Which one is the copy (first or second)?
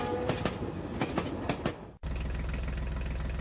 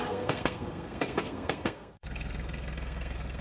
second